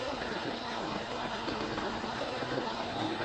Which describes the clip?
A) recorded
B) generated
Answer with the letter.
B